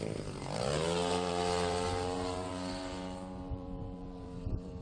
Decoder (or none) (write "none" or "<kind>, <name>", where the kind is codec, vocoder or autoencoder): vocoder, BigVGAN v2